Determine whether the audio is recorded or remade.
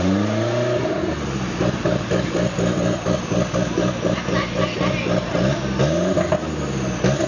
recorded